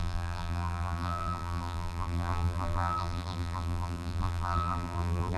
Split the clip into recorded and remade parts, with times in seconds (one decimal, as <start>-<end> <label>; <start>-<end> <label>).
0.0-5.4 remade